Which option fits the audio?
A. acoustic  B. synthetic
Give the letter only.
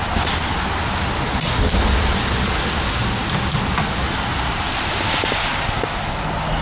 A